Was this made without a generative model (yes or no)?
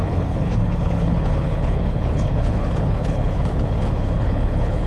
no